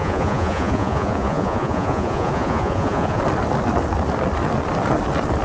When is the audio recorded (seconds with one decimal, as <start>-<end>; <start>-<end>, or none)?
3.2-5.4